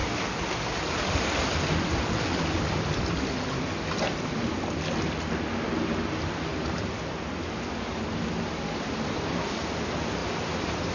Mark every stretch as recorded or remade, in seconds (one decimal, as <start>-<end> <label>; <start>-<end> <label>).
0.0-6.5 recorded; 6.5-7.3 remade; 7.3-10.2 recorded; 10.2-10.9 remade